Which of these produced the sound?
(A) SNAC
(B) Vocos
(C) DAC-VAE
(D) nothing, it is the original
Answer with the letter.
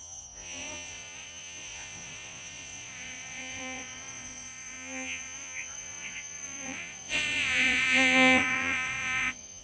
B